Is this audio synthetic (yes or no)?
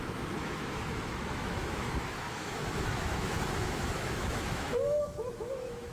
yes